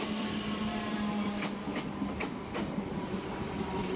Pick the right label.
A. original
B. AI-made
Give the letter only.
A